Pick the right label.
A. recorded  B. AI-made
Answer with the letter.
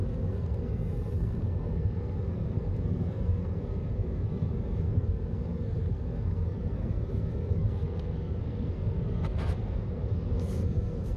B